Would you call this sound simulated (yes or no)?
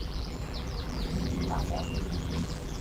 yes